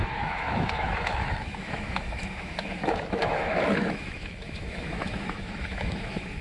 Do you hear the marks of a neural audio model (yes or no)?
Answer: yes